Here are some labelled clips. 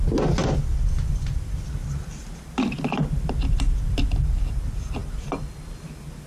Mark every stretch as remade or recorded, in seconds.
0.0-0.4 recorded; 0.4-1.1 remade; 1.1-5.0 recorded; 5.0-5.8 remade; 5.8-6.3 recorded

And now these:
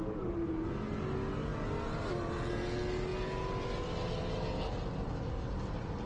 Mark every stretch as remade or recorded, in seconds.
0.0-6.1 recorded

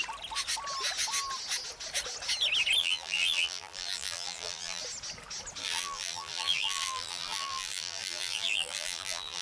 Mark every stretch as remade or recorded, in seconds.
0.0-2.8 recorded; 2.8-4.8 remade; 4.8-5.6 recorded; 5.6-9.4 remade

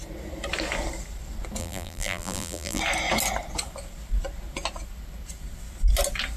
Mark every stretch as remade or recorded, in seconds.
0.0-1.6 recorded; 1.6-2.8 remade; 2.8-6.4 recorded